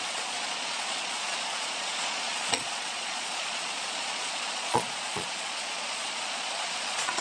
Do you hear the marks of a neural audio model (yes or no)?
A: yes